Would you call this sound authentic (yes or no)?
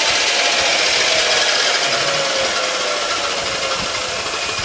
yes